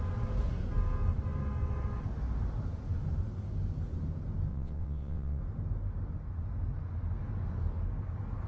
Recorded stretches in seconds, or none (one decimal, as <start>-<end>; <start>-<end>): 0.0-4.5; 5.4-8.5